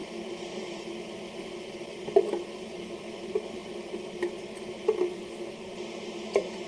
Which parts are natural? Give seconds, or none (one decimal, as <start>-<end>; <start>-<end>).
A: 0.9-3.6; 4.3-6.7